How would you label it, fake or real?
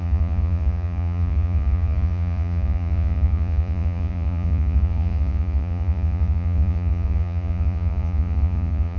fake